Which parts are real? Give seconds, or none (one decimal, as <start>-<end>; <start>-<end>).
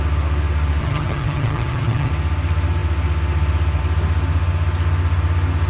0.0-0.8; 2.1-5.7